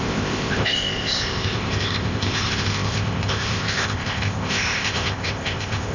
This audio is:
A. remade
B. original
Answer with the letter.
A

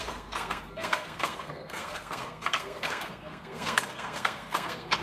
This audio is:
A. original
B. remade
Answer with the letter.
B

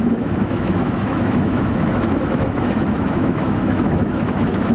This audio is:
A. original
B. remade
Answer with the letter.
B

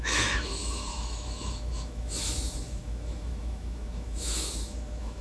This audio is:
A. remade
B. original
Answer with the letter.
A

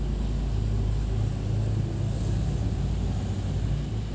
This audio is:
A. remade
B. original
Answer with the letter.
B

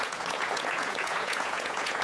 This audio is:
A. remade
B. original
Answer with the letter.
A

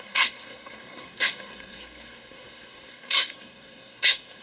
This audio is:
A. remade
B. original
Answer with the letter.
A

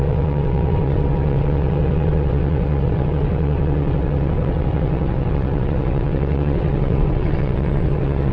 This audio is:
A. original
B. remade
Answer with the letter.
B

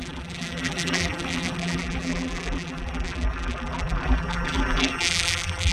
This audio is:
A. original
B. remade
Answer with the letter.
B